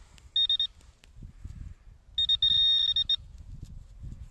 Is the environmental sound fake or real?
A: real